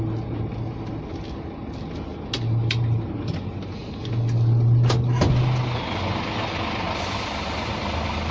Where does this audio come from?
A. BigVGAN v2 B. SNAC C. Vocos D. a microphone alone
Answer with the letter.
D